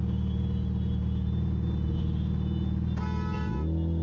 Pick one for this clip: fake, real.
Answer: real